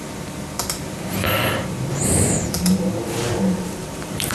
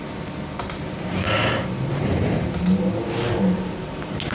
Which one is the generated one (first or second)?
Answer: first